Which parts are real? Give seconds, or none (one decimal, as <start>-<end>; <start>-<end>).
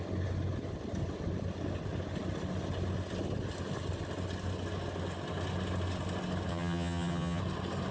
0.0-6.5; 7.4-7.9